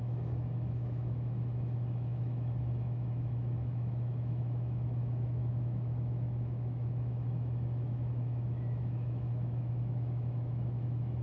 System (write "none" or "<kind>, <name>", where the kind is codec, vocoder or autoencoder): autoencoder, DAC-VAE